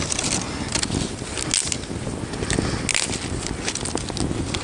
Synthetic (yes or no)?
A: no